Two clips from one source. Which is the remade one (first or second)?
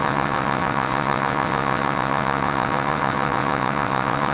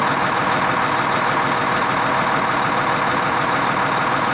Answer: first